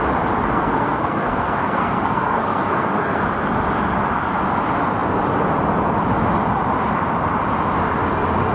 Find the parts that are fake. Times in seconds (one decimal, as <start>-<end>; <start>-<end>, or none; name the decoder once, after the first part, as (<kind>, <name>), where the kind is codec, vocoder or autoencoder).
0.4-3.2 (codec, SNAC)